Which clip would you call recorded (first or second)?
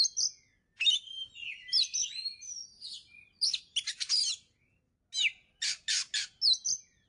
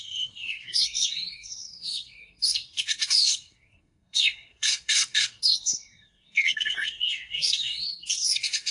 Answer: first